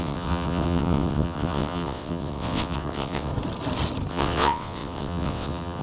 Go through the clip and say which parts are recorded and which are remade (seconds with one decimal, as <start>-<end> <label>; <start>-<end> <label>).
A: 0.0-3.3 remade; 3.3-4.1 recorded; 4.1-5.8 remade